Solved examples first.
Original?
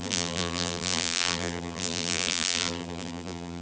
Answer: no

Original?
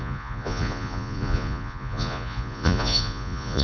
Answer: no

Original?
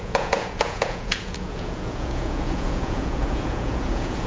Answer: no